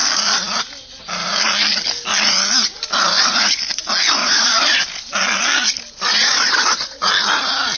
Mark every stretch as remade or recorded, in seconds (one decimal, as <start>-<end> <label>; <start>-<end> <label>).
0.0-4.2 recorded; 4.2-4.8 remade; 4.8-6.1 recorded; 6.1-7.1 remade; 7.1-7.8 recorded